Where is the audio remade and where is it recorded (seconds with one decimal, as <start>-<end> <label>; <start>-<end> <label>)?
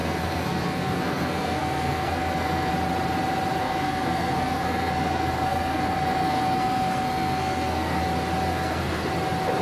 0.0-2.7 remade; 2.7-3.6 recorded; 3.6-8.0 remade; 8.0-8.5 recorded; 8.5-9.1 remade; 9.1-9.6 recorded